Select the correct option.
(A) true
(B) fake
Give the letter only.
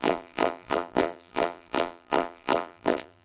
B